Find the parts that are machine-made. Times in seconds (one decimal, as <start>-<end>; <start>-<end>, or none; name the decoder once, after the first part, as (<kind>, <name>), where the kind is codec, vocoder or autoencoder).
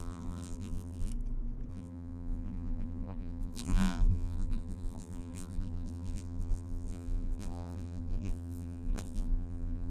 0.0-1.1 (vocoder, BigVGAN v2); 1.7-9.9